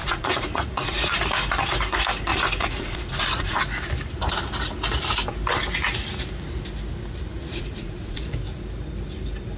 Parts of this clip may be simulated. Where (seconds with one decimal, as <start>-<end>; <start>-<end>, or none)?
0.0-1.1; 2.3-3.6; 7.3-8.3